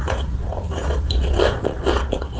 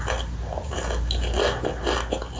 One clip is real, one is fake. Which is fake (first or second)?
first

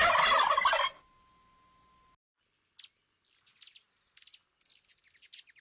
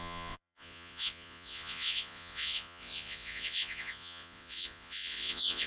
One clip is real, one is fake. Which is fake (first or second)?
second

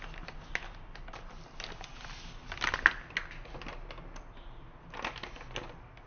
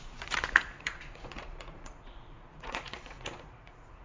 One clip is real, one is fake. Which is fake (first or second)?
second